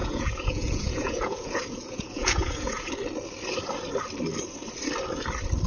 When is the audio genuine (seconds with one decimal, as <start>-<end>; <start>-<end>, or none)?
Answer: 2.9-5.7